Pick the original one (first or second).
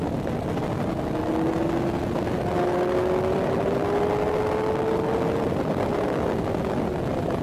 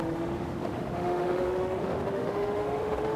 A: first